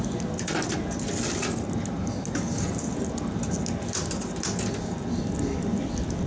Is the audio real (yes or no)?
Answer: yes